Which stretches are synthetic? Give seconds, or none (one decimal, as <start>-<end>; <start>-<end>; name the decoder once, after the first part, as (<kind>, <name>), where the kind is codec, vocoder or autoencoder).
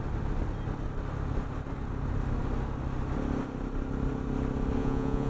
4.8-5.3 (vocoder, Vocos)